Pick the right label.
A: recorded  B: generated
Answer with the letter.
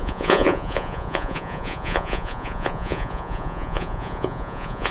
B